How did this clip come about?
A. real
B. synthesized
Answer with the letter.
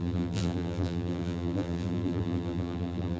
B